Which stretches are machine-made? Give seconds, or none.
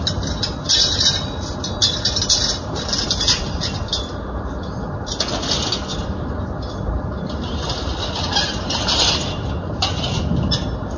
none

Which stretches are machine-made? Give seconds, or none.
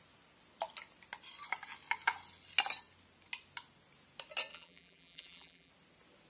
4.5-5.7 (vocoder, BigVGAN v2)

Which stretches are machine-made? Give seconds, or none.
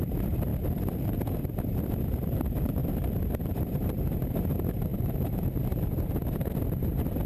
0.0-0.5 (vocoder, BigVGAN v2); 1.4-2.8; 3.4-7.3